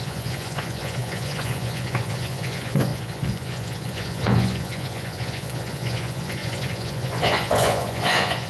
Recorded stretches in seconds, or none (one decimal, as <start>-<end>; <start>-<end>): none